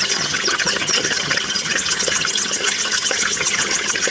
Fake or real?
fake